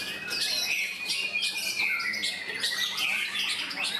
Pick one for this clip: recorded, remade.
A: recorded